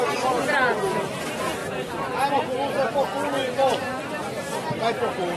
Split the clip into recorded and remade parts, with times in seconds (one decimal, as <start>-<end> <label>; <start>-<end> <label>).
0.0-5.4 recorded

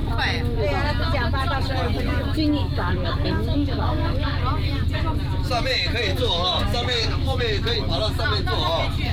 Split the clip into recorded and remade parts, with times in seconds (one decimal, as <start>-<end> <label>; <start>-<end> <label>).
0.0-2.6 recorded; 2.6-4.4 remade; 4.4-6.1 recorded; 6.1-7.4 remade; 7.4-9.1 recorded